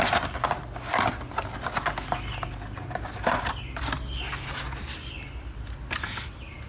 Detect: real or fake real